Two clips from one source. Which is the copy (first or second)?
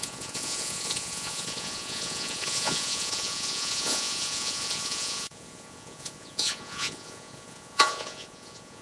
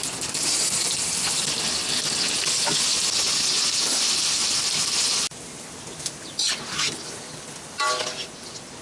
first